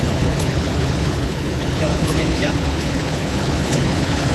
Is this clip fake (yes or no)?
yes